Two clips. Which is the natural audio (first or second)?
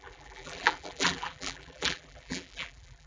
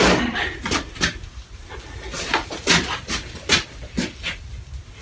second